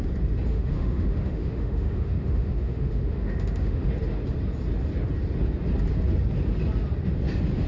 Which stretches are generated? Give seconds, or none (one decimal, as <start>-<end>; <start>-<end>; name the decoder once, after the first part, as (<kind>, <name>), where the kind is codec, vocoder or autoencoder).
0.5-3.9 (autoencoder, DAC-VAE)